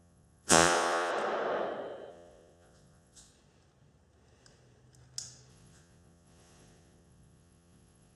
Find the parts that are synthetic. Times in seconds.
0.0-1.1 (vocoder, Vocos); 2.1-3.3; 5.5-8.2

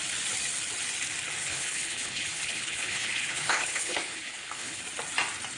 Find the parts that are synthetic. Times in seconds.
1.4-4.8 (codec, HILCodec)

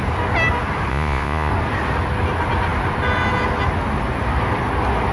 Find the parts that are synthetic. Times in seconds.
0.9-1.5 (vocoder, Vocos)